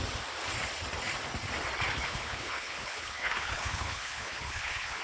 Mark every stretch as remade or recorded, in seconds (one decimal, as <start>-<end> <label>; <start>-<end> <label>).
0.0-1.9 recorded; 1.9-5.0 remade